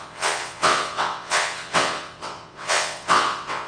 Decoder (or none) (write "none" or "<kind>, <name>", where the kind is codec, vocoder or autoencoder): vocoder, WaveNeXt